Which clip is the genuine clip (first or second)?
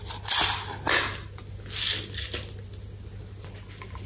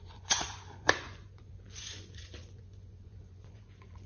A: first